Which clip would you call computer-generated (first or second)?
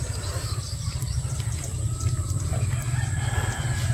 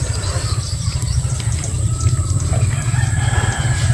second